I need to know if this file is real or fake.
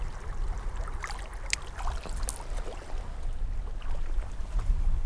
real